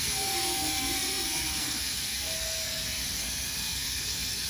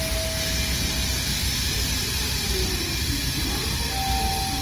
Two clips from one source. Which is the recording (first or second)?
second